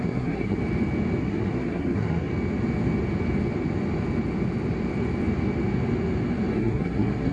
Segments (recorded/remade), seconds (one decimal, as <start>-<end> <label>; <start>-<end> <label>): 0.0-0.6 remade; 0.6-1.2 recorded; 1.2-2.3 remade; 2.3-6.5 recorded; 6.5-7.3 remade